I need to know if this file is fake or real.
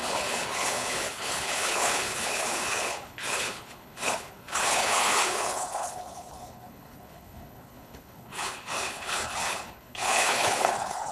fake